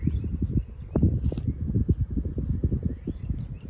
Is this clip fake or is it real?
real